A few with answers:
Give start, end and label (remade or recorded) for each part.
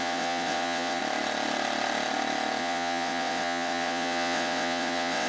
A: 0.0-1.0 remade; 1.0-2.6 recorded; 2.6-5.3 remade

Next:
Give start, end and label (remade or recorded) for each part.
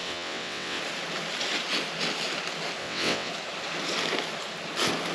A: 0.0-0.8 remade; 0.8-2.8 recorded; 2.8-3.3 remade; 3.3-5.1 recorded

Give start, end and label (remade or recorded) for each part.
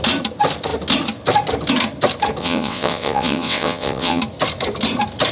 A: 0.0-2.4 recorded; 2.4-4.2 remade; 4.2-5.3 recorded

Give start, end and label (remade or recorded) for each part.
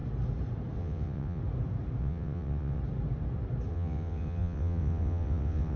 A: 0.0-0.8 recorded; 0.8-1.4 remade; 1.4-2.0 recorded; 2.0-2.8 remade; 2.8-3.7 recorded; 3.7-5.8 remade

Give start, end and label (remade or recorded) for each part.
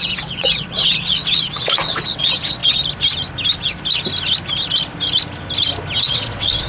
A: 0.0-2.6 remade; 2.6-6.0 recorded; 6.0-6.7 remade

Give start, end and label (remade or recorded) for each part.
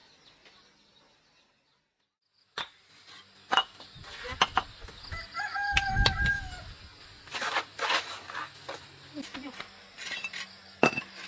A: 0.0-11.3 recorded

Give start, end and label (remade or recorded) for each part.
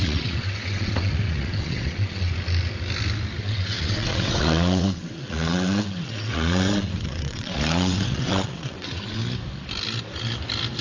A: 0.0-2.3 remade; 2.3-3.4 recorded; 3.4-9.2 remade; 9.2-10.8 recorded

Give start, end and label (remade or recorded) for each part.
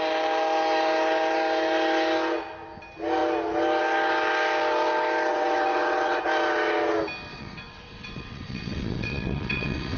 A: 0.0-5.3 recorded; 5.3-6.2 remade; 6.2-7.3 recorded; 7.3-10.0 remade